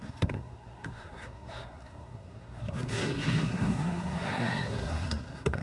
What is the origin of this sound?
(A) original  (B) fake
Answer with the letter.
B